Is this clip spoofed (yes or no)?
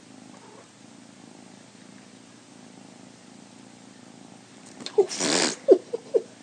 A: yes